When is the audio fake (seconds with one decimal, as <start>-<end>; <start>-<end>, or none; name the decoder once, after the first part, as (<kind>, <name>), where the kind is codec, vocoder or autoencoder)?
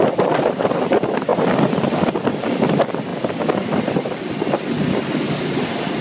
none